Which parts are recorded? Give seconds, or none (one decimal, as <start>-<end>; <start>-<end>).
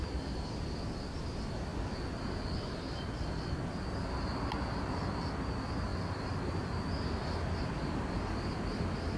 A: 0.0-9.2